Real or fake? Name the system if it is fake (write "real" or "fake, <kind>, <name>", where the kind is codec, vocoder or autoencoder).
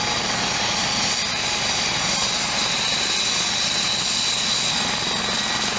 real